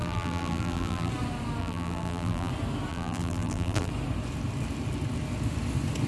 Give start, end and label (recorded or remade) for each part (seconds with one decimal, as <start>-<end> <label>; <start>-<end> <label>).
0.0-1.1 remade; 1.1-1.6 recorded; 1.6-2.5 remade; 2.5-2.9 recorded; 2.9-3.9 remade; 3.9-6.1 recorded